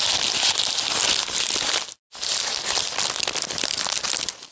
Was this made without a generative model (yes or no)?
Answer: yes